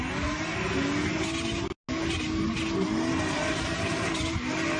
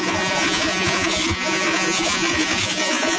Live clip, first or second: first